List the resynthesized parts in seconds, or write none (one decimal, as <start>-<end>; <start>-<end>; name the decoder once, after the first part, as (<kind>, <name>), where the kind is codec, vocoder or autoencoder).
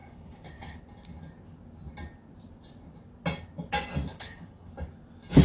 0.0-0.8 (codec, HILCodec); 4.1-4.7